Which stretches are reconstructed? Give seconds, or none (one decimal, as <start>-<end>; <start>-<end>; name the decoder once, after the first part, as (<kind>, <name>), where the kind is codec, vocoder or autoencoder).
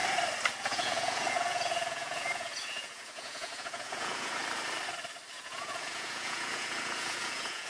0.6-4.4 (vocoder, Vocos); 5.3-7.7